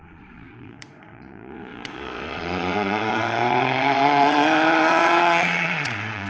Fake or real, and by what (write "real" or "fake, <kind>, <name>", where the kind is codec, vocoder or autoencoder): fake, vocoder, Vocos